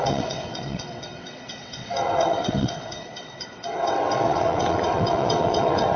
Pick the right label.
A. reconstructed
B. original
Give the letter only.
A